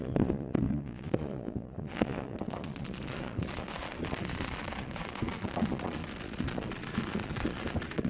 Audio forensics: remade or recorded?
remade